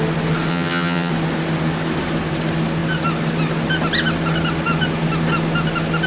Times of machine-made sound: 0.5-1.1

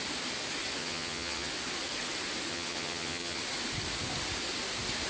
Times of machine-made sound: 0.8-1.5; 2.5-3.4

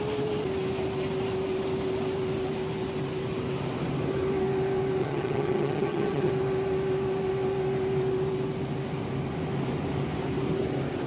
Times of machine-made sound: 5.0-6.3